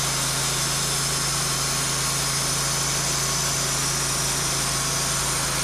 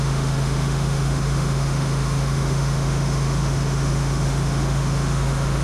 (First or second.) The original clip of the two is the first